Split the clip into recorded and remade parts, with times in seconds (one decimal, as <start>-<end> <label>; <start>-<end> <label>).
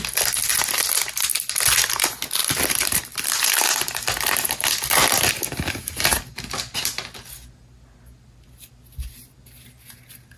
0.0-2.4 recorded; 2.4-5.3 remade; 5.3-10.4 recorded